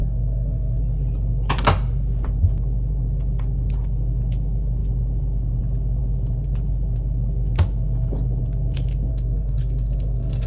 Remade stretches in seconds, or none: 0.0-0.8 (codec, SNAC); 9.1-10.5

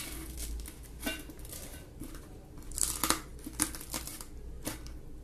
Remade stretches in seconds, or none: 1.7-2.7 (vocoder, BigVGAN v2)

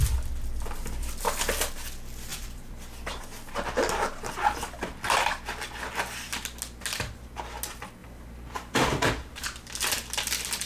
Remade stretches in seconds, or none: 0.8-1.4 (vocoder, BigVGAN v2); 2.3-3.2; 8.0-8.8

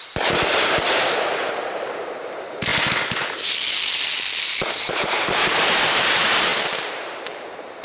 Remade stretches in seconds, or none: 0.0-2.7 (vocoder, BigVGAN v2); 4.7-7.8

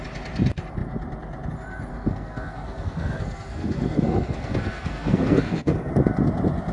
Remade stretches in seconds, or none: 1.9-5.9 (codec, SNAC)

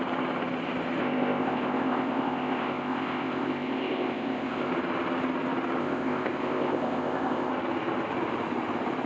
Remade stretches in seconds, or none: 1.0-4.7 (codec, ZipCodec); 5.8-7.5